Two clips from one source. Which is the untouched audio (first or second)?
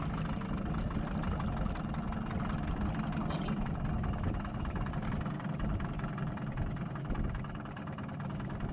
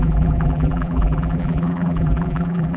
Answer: first